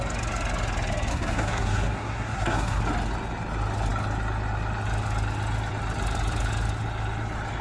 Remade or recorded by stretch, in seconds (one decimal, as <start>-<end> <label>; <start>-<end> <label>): 0.0-1.1 recorded; 1.1-2.8 remade; 2.8-7.6 recorded